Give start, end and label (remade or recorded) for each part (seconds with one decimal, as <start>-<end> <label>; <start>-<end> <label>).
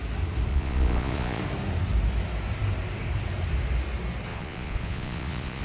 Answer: 0.0-0.5 recorded; 0.5-1.4 remade; 1.4-4.3 recorded; 4.3-5.6 remade